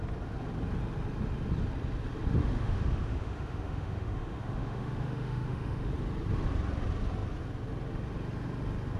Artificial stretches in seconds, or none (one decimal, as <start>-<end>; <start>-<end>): 2.4-5.9